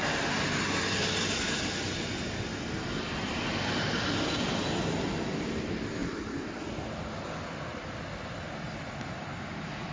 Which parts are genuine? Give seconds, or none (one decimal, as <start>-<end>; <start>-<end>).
0.0-9.9